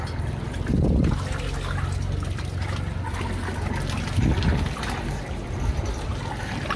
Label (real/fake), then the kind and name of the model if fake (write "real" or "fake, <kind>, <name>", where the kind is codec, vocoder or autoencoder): real